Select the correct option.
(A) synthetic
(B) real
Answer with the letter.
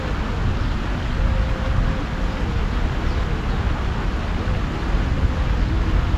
B